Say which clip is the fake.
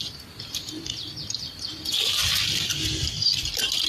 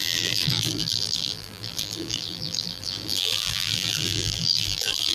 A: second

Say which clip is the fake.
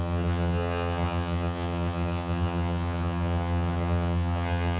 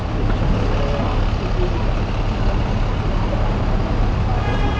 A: first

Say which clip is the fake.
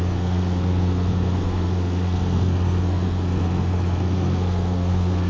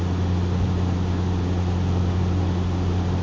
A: first